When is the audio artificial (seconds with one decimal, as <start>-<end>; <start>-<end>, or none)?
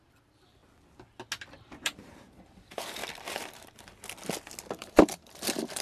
0.0-0.6; 1.6-3.0; 4.7-5.8